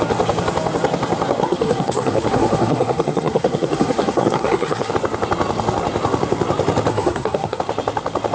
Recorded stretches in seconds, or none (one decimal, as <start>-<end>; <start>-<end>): 0.0-1.4; 4.9-6.9; 7.6-8.3